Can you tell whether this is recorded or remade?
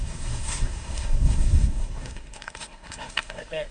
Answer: remade